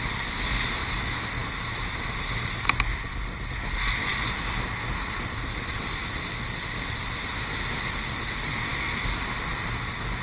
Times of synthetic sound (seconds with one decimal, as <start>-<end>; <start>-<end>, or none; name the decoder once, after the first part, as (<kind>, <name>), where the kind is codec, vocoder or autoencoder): none